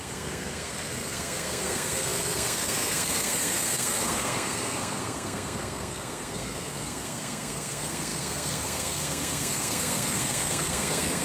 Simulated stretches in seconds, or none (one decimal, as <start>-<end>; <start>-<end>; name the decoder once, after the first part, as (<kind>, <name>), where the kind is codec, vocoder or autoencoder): 0.0-11.2 (codec, SNAC)